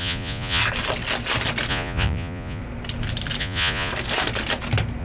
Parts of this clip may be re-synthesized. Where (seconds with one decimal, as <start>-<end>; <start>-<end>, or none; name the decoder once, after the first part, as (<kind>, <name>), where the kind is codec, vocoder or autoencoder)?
0.0-0.6 (vocoder, Vocos); 1.7-2.6; 3.4-3.9